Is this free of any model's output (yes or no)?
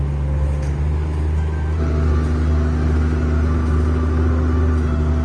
yes